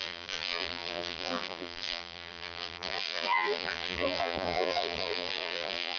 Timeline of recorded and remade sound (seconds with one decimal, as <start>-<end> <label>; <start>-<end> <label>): 0.0-6.0 remade